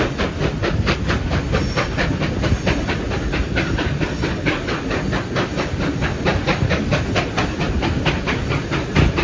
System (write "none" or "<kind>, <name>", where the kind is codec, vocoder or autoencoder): none